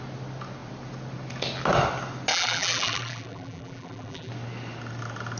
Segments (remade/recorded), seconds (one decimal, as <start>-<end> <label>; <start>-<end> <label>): 0.0-2.3 recorded; 2.3-4.3 remade; 4.3-5.4 recorded